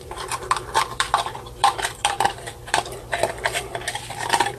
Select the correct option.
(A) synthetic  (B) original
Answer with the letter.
A